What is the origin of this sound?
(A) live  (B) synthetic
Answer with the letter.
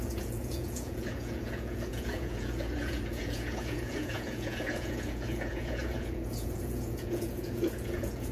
B